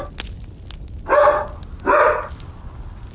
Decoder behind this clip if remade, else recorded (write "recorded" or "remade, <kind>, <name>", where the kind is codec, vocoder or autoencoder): recorded